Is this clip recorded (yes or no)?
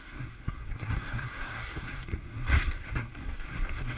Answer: no